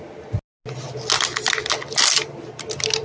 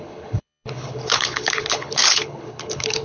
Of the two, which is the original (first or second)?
first